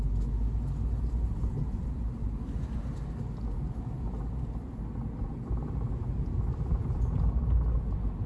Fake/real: real